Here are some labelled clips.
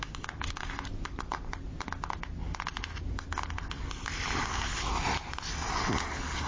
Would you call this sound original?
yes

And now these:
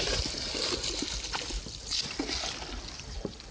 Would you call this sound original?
yes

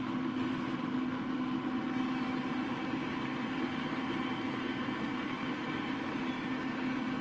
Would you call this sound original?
yes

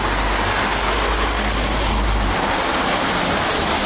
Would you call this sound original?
yes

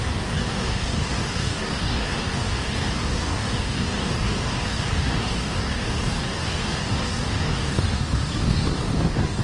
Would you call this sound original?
no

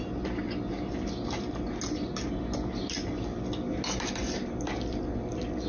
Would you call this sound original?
yes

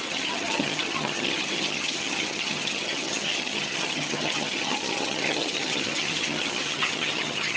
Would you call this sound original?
no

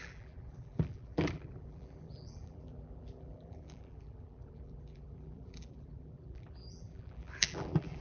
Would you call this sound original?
no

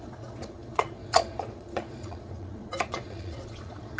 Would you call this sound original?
no